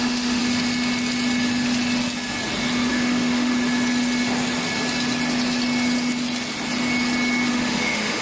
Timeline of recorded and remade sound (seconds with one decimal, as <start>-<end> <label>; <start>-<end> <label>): 0.0-0.4 remade; 0.4-2.9 recorded; 2.9-3.5 remade; 3.5-7.5 recorded; 7.5-8.2 remade